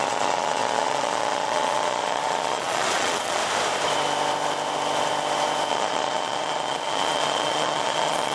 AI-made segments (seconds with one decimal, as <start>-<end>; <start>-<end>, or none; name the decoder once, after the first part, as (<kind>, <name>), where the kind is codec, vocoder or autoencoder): 0.0-3.4 (vocoder, Vocos); 5.7-8.3